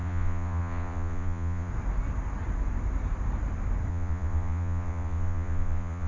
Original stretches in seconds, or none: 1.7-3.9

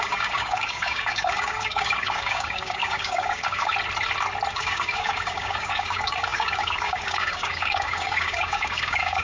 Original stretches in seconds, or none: 3.7-4.5